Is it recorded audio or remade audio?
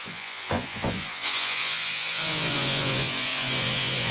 remade